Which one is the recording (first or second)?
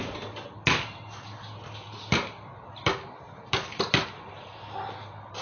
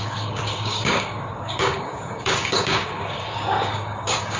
first